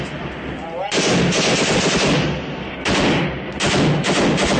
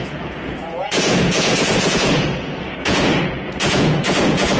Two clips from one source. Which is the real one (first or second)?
first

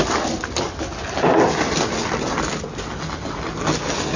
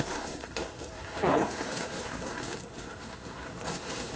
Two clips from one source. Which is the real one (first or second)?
first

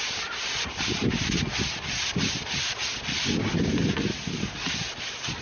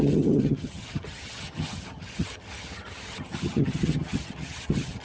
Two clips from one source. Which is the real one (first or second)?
first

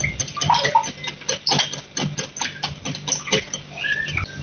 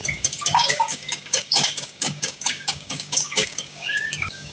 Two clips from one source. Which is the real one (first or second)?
first